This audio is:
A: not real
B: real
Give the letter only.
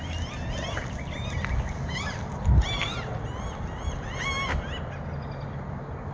B